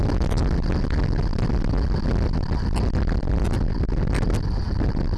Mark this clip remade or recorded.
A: recorded